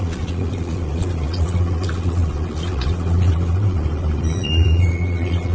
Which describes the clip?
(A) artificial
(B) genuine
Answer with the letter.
A